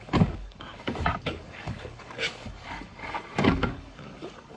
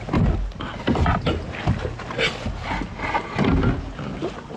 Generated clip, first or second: first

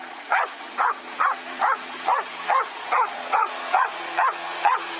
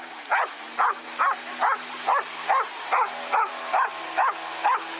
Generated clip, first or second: first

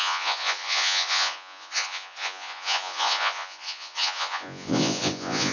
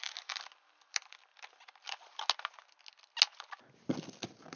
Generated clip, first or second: first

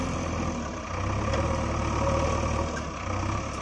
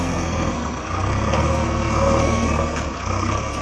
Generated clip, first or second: second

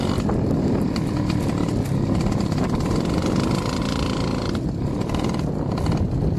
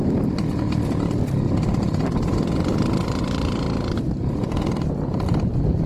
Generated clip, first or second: second